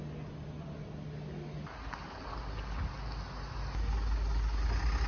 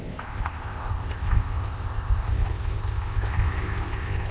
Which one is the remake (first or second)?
second